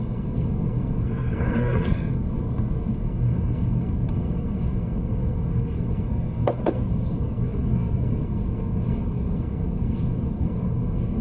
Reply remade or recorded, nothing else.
remade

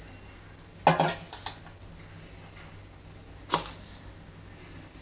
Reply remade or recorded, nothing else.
recorded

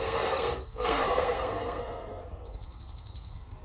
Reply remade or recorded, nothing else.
remade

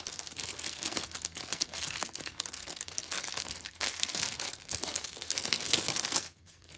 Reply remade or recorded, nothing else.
remade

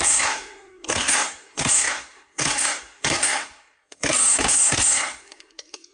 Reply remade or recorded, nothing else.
remade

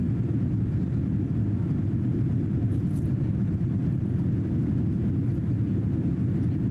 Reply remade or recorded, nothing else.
recorded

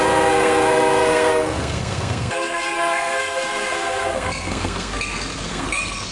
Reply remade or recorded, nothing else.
remade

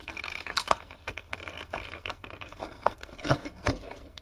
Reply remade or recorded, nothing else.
remade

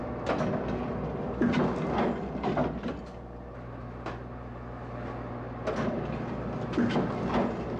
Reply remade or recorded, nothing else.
recorded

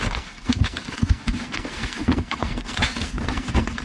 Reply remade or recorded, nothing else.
remade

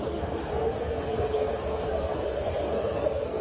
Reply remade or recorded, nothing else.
remade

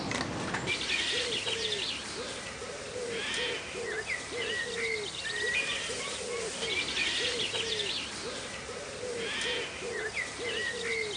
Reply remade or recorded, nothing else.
recorded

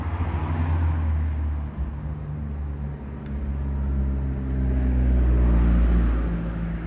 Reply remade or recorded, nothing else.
recorded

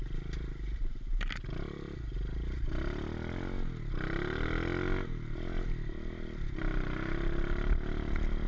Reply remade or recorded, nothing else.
recorded